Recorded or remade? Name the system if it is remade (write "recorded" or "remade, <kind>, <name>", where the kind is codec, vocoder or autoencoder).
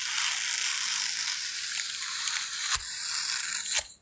recorded